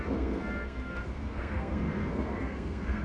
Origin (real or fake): fake